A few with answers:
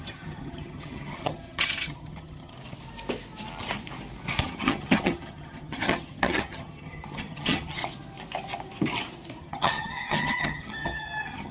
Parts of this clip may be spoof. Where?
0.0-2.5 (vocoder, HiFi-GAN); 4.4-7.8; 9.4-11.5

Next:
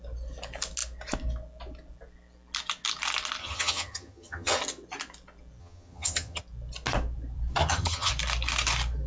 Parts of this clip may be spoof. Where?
3.4-4.6 (vocoder, HiFi-GAN); 5.6-6.4; 7.6-8.1

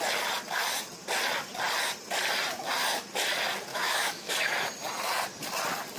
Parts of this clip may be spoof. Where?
3.7-4.3 (autoencoder, DAC-VAE)